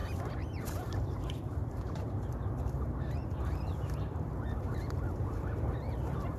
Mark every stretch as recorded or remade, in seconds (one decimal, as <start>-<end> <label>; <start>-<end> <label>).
0.0-0.6 recorded; 0.6-6.4 remade